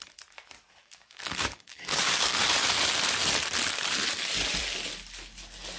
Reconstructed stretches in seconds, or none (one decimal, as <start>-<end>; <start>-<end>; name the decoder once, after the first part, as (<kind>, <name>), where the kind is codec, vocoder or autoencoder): 0.8-2.4 (codec, DAC)